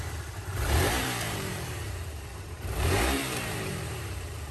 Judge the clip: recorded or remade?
remade